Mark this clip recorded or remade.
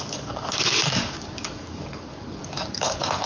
remade